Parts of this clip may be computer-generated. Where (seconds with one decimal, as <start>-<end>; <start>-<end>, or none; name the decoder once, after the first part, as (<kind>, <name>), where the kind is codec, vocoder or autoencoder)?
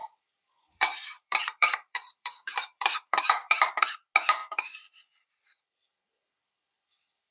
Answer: 0.0-3.7 (vocoder, BigVGAN v2); 4.4-5.3